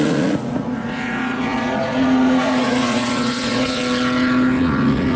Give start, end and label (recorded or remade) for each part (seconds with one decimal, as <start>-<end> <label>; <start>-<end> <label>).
0.0-3.8 remade; 3.8-4.6 recorded; 4.6-5.2 remade